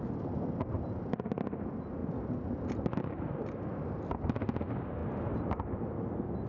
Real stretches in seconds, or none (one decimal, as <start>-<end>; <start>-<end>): 0.0-6.5